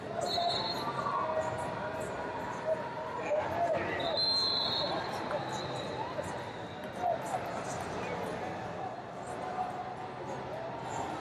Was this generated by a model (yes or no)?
no